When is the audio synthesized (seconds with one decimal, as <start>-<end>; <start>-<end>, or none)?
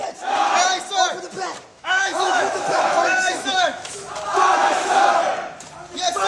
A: 1.7-4.1; 4.6-5.2